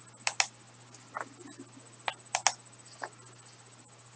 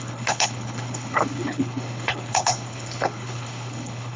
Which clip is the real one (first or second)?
first